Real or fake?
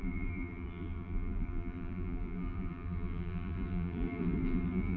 fake